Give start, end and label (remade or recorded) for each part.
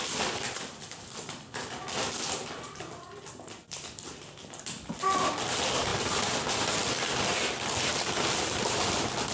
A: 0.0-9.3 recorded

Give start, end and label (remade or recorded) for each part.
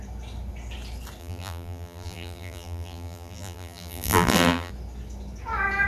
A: 0.0-1.2 recorded; 1.2-4.7 remade; 4.7-5.9 recorded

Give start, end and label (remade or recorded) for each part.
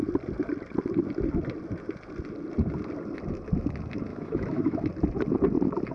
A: 0.0-4.1 recorded; 4.1-4.9 remade; 4.9-5.9 recorded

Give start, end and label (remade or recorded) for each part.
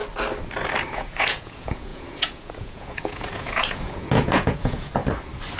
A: 0.0-0.9 recorded; 0.9-5.0 remade; 5.0-5.6 recorded